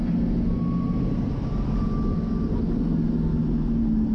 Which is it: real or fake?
real